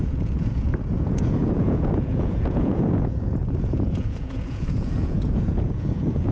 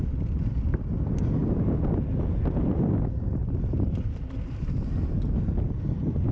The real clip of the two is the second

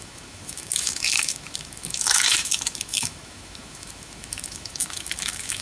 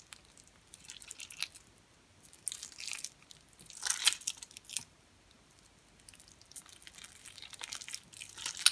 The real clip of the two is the second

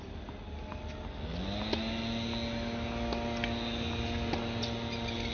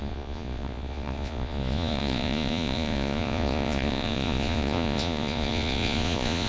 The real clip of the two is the first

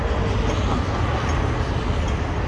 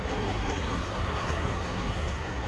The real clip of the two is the first